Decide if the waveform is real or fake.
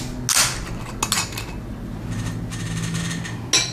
real